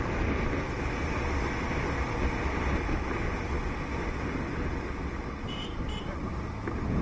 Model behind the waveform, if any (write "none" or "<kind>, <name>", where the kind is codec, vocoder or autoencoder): none